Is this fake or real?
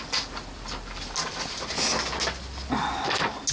real